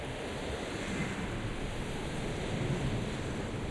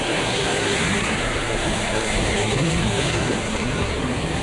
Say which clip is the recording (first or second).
first